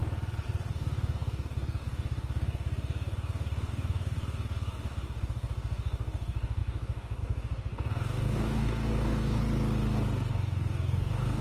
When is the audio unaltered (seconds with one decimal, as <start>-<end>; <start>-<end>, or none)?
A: 0.0-0.7; 9.4-10.3